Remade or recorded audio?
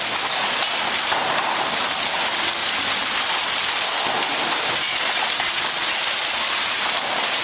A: recorded